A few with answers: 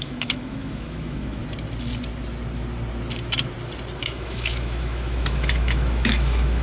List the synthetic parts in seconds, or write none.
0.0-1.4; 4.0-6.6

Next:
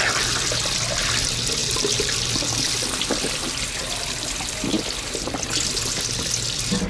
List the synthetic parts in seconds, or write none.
none

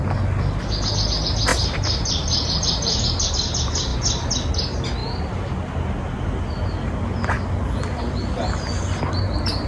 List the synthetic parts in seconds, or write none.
1.5-3.3

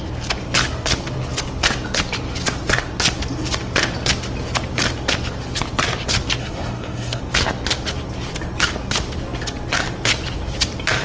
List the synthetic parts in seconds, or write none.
6.4-7.2

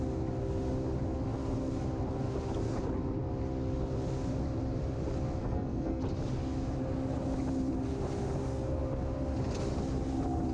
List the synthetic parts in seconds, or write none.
5.4-6.0

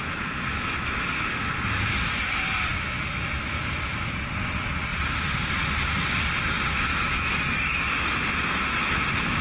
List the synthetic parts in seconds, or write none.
0.0-1.5; 2.7-3.8; 6.9-7.9

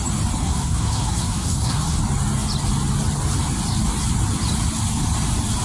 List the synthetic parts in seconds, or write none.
0.4-2.0

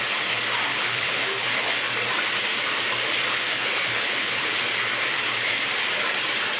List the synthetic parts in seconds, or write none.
0.7-1.7; 3.3-4.5